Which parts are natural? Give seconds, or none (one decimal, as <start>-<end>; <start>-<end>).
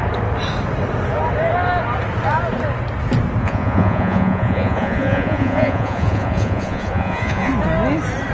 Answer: 0.0-3.4; 7.5-8.3